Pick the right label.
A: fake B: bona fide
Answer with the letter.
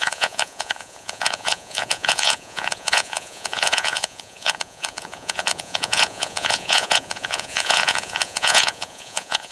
A